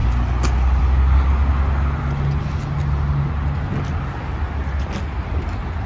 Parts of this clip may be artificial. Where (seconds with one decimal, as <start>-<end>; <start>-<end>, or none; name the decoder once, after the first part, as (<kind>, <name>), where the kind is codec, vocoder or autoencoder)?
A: none